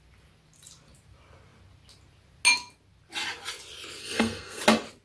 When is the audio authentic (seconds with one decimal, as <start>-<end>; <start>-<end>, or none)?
0.0-4.0; 4.6-5.0